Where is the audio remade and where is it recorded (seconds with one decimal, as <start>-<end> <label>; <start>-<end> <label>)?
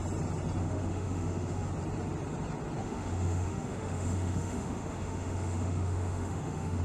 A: 0.0-0.6 recorded; 0.6-1.7 remade; 1.7-2.8 recorded; 2.8-6.8 remade